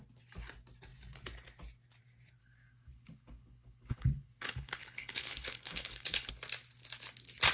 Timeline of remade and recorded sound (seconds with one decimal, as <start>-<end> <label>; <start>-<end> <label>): 0.0-2.4 recorded; 2.4-6.3 remade; 6.3-7.5 recorded